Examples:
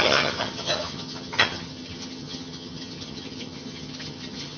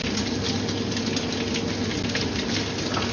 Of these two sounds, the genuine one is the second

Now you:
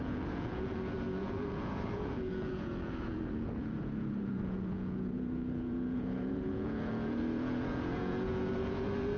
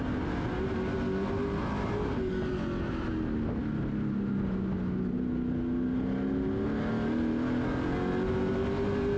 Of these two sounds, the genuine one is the second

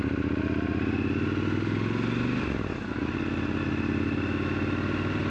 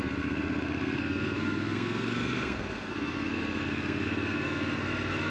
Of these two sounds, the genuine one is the first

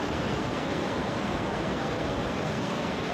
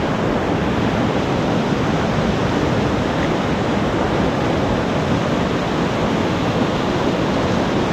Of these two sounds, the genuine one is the second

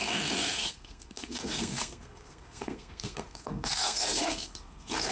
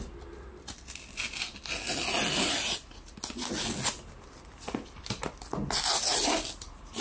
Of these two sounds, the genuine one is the second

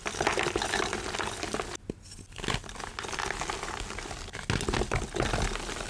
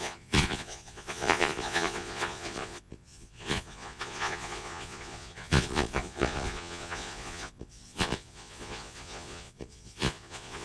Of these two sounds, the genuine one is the first